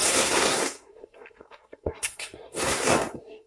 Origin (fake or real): fake